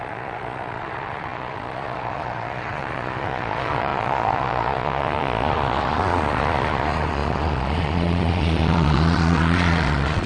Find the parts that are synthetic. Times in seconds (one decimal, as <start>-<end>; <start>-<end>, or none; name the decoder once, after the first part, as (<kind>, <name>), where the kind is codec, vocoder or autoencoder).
0.0-10.3 (vocoder, Vocos)